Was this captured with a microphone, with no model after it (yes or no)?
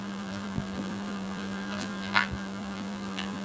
no